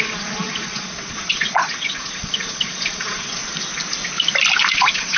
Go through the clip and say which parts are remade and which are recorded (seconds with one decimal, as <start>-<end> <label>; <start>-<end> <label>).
0.0-3.4 remade; 3.4-4.7 recorded; 4.7-5.2 remade

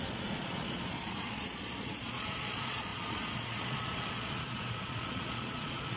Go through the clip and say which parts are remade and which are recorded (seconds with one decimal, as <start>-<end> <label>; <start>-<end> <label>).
0.0-6.0 remade